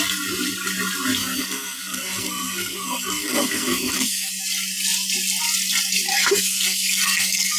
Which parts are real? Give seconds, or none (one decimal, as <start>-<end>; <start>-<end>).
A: 0.0-1.2; 4.3-6.1